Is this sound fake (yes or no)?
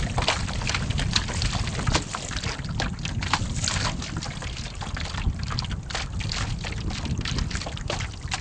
no